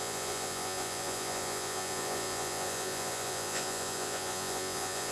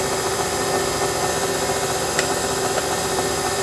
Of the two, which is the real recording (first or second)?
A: second